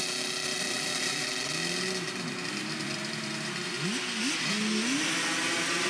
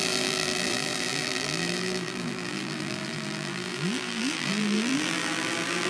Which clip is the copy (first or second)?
second